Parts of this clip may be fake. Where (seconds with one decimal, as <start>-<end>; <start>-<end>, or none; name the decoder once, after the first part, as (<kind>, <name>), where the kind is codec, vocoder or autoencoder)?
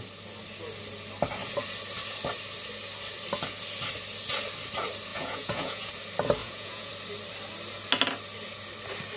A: 5.1-5.9 (vocoder, Vocos); 6.4-6.9